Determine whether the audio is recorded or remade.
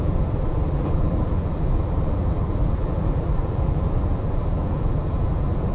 remade